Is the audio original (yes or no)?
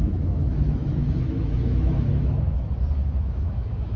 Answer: no